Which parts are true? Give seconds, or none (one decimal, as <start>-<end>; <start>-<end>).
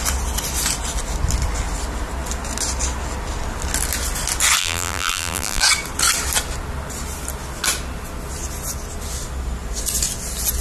0.0-4.6; 5.6-10.6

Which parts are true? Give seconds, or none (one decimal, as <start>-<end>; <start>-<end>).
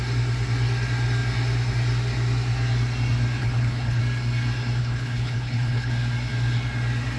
0.0-3.4; 4.0-4.8; 5.9-7.2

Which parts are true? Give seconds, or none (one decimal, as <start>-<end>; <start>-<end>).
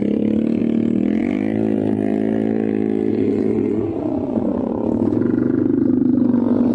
0.0-3.1; 4.7-6.7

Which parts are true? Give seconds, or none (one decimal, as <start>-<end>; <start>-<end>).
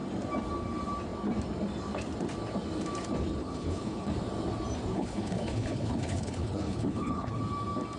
0.0-3.4; 4.1-4.9; 7.4-8.0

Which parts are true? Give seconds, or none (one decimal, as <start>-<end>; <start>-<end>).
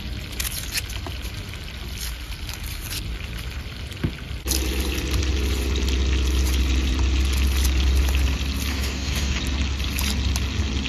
0.0-8.7; 9.4-10.9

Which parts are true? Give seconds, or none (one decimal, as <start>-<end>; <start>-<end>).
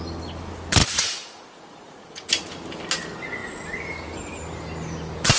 0.0-0.8; 2.3-5.4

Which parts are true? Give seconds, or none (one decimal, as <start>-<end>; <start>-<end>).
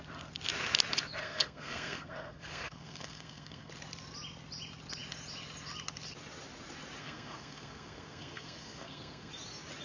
0.0-1.2; 3.7-7.0; 9.3-9.8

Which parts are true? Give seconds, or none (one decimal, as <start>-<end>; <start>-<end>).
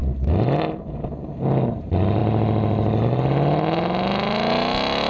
0.0-5.1